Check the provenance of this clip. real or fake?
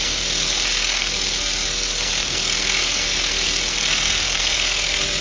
fake